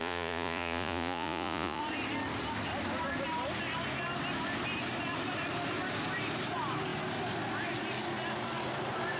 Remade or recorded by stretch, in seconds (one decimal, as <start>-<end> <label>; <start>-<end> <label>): 0.0-1.8 remade; 1.8-9.2 recorded